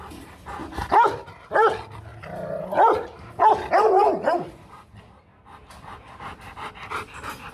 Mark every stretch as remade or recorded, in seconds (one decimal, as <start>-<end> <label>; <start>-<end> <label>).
0.0-7.5 recorded